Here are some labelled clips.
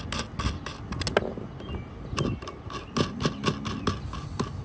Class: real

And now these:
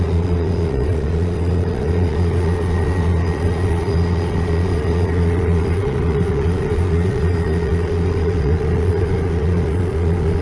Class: fake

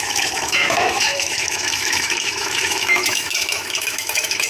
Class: fake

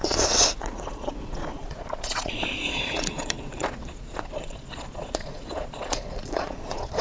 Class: fake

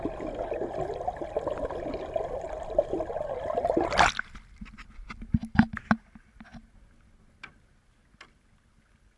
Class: real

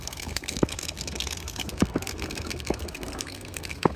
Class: fake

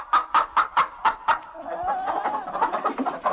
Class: real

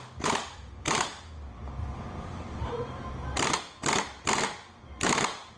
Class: real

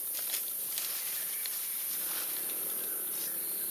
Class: real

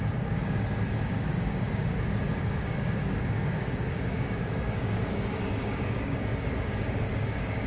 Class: fake